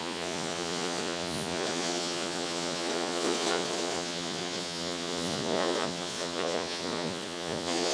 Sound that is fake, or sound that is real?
fake